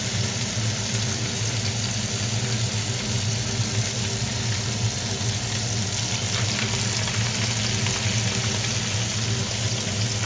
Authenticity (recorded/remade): recorded